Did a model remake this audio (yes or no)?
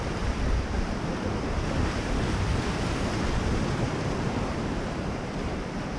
yes